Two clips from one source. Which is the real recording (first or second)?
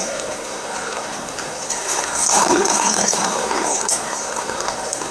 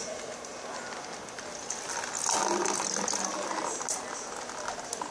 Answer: second